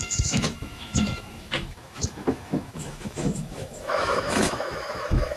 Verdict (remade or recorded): remade